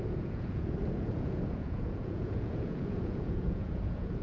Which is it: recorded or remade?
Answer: remade